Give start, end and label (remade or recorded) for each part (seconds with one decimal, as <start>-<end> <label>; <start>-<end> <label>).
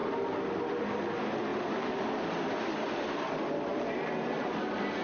0.0-1.5 recorded; 1.5-3.3 remade; 3.3-3.7 recorded; 3.7-4.6 remade; 4.6-5.0 recorded